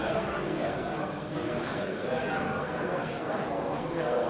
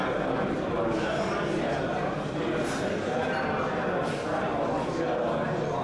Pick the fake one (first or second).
first